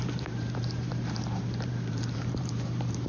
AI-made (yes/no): yes